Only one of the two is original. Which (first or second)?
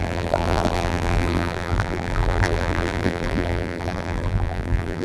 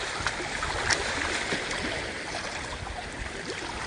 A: second